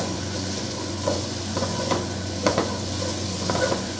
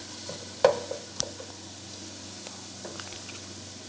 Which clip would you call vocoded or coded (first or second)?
first